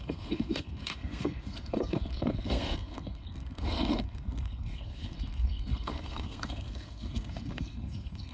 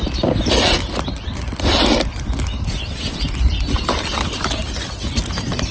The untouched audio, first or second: second